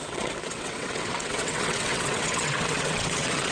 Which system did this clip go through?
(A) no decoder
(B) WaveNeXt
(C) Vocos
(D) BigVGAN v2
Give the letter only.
B